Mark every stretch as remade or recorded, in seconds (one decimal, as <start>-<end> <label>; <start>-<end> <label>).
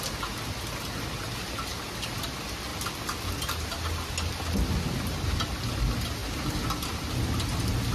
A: 0.0-2.7 recorded; 2.7-4.1 remade; 4.1-6.2 recorded; 6.2-7.4 remade; 7.4-7.9 recorded